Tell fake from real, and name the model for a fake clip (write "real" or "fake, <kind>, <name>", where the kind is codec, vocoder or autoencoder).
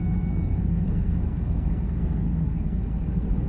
fake, codec, SNAC